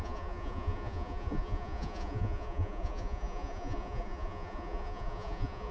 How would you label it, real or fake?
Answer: fake